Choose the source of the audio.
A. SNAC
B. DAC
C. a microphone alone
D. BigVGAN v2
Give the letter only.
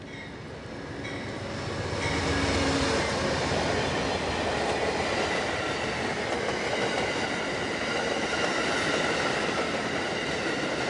C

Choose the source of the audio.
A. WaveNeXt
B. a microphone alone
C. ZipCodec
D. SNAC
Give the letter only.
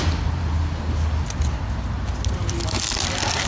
B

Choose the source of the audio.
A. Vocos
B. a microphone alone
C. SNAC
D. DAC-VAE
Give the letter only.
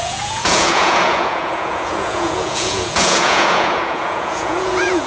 A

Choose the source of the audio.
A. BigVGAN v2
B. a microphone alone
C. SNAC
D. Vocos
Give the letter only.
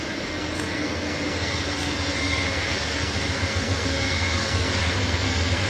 C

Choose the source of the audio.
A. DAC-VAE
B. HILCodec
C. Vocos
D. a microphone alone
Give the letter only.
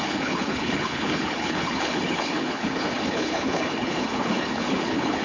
B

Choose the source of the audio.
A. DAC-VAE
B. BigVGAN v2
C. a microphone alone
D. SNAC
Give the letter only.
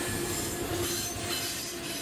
C